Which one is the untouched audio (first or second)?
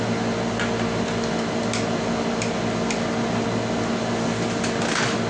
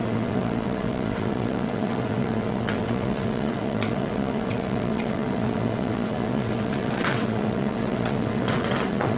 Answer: first